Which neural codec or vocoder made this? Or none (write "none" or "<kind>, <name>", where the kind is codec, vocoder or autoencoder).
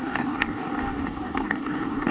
codec, DAC